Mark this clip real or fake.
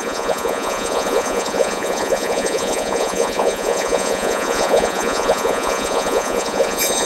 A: fake